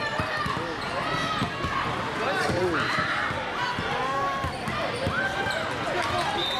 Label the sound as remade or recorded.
recorded